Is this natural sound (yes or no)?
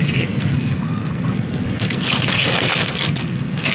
no